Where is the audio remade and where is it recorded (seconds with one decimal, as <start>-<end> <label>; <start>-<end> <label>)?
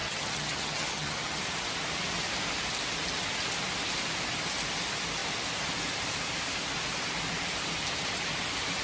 0.0-1.4 remade; 1.4-8.8 recorded